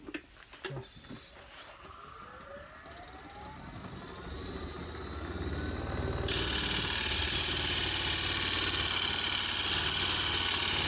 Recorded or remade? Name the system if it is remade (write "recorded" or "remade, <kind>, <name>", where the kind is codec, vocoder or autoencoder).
recorded